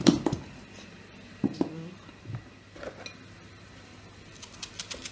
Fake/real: real